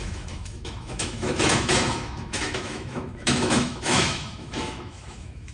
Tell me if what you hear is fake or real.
fake